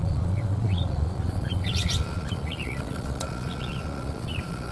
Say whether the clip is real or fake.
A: fake